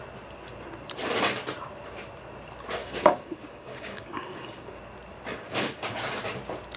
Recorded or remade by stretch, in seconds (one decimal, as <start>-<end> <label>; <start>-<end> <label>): 0.0-2.8 recorded; 2.8-4.8 remade; 4.8-5.3 recorded; 5.3-5.9 remade; 5.9-6.8 recorded